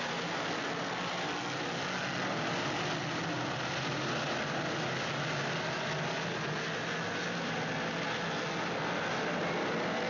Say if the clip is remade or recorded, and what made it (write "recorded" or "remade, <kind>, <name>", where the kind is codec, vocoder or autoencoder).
recorded